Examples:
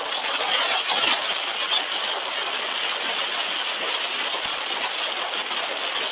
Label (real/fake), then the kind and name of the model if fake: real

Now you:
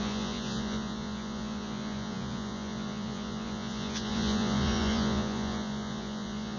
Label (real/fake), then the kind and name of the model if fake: fake, vocoder, Vocos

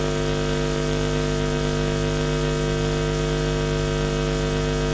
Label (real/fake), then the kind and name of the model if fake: real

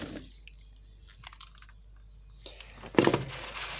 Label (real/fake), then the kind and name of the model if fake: real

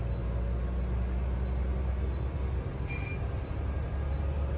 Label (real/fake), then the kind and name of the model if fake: real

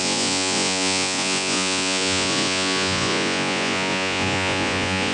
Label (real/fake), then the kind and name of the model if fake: fake, vocoder, Vocos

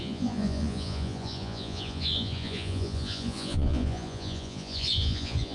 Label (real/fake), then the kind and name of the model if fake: fake, vocoder, Vocos